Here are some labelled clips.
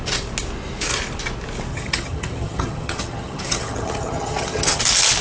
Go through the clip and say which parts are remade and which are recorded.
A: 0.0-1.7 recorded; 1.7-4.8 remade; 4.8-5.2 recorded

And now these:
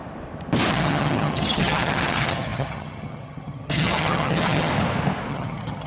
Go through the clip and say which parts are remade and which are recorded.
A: 0.0-0.7 recorded; 0.7-4.7 remade; 4.7-5.3 recorded; 5.3-5.9 remade

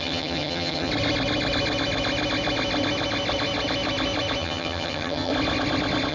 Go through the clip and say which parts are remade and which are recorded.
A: 0.0-0.9 remade; 0.9-4.4 recorded; 4.4-5.3 remade; 5.3-6.1 recorded